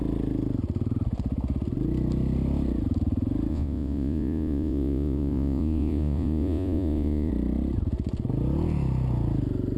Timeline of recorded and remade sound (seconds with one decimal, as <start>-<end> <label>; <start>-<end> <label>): 0.0-3.5 recorded; 3.5-7.3 remade; 7.3-9.8 recorded